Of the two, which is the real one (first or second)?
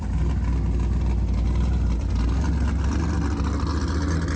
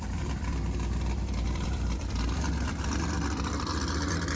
first